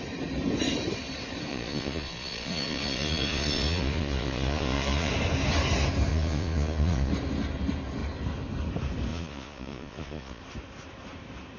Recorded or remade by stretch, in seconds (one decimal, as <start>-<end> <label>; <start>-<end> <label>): 0.0-1.5 recorded; 1.5-5.1 remade; 5.1-6.1 recorded; 6.1-7.1 remade; 7.1-9.1 recorded; 9.1-10.4 remade; 10.4-11.6 recorded